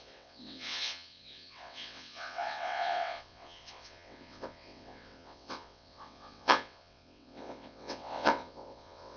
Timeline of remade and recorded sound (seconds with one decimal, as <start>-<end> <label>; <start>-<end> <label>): 0.0-9.2 remade